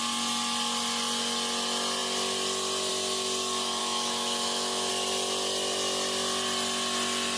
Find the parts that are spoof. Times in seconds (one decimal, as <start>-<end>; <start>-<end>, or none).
3.8-4.9